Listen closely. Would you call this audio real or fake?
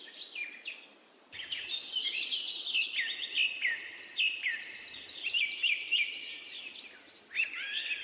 real